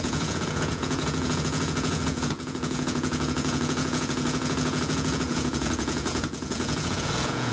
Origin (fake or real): fake